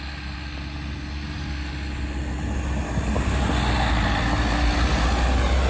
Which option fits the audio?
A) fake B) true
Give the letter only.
B